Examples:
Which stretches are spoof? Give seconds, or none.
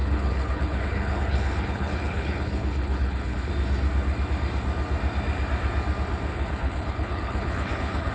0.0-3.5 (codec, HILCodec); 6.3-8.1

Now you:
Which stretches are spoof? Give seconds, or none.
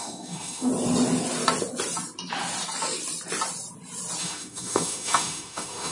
0.0-0.7 (autoencoder, DAC-VAE); 4.2-5.9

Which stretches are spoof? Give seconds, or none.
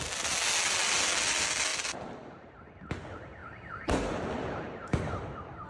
1.7-2.5 (vocoder, BigVGAN v2); 3.4-4.2; 4.8-5.7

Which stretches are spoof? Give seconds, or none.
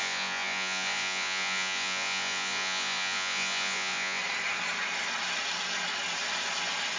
0.0-4.2 (vocoder, Vocos)